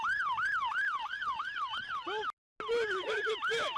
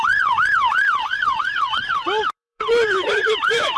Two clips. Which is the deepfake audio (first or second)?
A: second